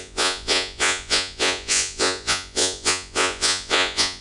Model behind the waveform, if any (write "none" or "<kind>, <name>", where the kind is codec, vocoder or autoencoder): vocoder, Vocos